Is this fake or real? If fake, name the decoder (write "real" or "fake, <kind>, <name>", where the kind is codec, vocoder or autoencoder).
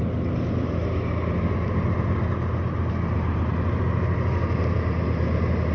real